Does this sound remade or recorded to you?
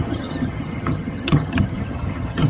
remade